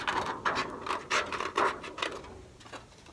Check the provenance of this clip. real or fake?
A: real